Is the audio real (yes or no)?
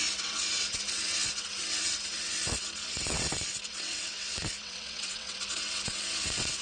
no